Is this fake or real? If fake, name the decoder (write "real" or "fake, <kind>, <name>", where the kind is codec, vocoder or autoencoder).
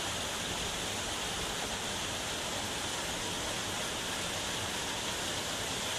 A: real